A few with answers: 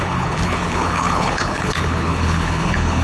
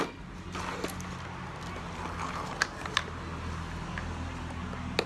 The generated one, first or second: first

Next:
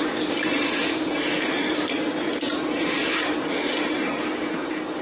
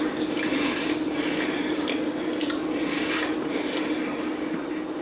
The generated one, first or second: first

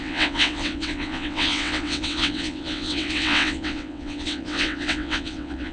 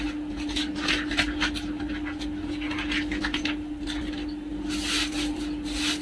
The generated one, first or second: first